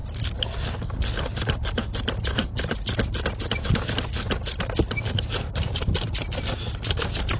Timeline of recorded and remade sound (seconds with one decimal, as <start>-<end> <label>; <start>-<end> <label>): 0.0-7.4 recorded